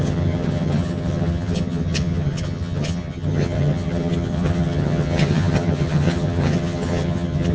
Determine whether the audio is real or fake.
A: fake